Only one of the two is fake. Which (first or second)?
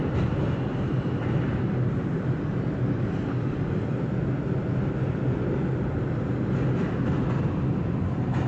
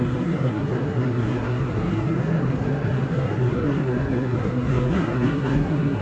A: second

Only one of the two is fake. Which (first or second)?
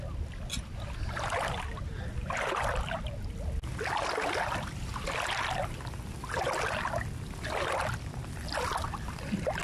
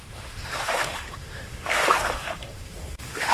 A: second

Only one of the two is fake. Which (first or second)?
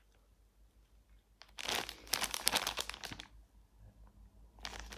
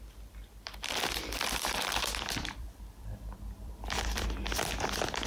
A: second